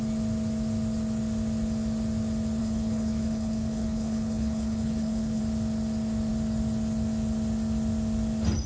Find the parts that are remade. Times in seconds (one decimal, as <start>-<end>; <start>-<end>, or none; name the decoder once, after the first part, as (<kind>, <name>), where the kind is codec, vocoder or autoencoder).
2.6-5.4 (codec, HILCodec)